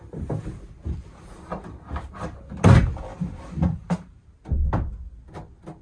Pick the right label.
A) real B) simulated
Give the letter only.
A